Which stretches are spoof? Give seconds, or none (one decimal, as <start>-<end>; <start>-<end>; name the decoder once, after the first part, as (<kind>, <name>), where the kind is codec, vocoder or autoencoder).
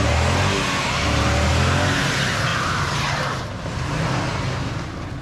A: 2.5-3.4 (vocoder, BigVGAN v2)